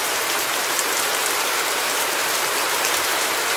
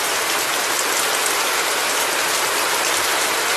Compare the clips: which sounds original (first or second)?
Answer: second